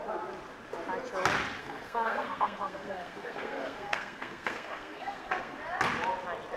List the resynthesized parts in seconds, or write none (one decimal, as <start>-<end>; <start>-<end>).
1.6-5.6